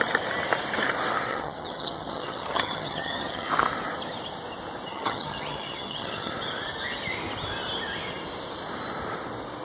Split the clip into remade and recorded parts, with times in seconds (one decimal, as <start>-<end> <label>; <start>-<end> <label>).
0.0-1.3 recorded; 1.3-3.5 remade; 3.5-4.9 recorded; 4.9-6.3 remade; 6.3-9.6 recorded